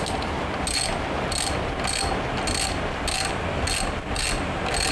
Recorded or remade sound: recorded